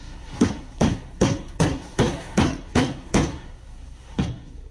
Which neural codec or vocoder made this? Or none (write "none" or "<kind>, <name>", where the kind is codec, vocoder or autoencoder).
codec, SNAC